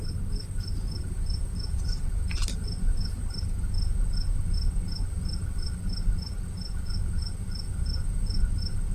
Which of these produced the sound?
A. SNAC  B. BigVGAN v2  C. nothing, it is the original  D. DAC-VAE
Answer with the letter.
C